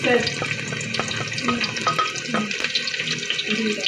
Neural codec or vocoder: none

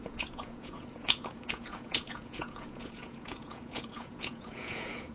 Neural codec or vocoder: vocoder, Vocos